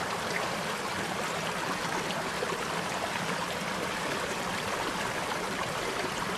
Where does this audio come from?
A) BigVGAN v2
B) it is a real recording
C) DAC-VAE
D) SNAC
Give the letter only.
A